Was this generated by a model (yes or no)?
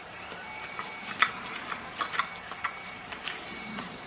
yes